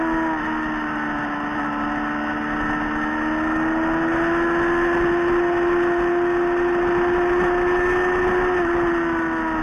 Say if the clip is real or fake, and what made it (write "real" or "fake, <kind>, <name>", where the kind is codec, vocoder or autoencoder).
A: real